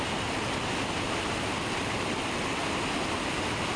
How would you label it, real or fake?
real